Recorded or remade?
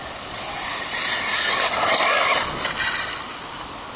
recorded